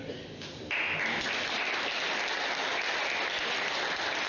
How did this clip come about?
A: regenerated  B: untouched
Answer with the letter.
B